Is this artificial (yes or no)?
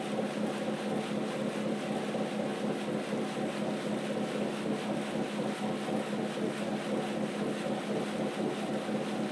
no